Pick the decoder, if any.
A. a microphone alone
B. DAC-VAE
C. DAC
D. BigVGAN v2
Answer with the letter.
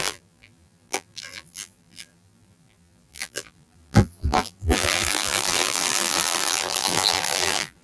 D